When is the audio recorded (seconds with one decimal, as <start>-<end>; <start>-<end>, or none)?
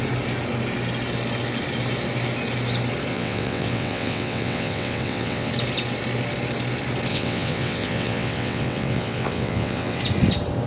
0.0-3.1; 5.5-7.1; 10.0-10.7